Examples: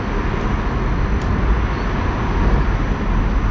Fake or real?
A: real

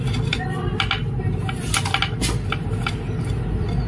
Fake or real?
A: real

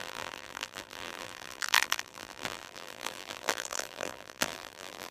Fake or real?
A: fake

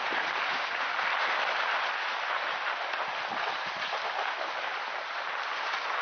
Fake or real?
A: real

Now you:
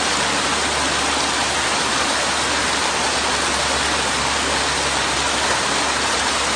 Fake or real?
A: real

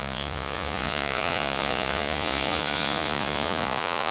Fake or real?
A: fake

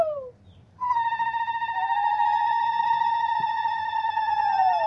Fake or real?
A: real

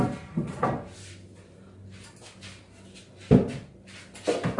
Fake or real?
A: real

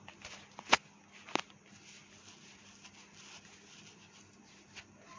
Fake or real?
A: real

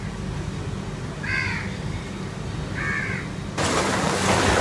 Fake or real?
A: real